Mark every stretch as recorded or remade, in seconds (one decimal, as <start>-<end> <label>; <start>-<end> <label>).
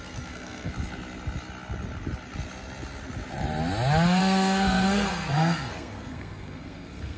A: 0.0-0.7 remade; 0.7-4.2 recorded; 4.2-7.2 remade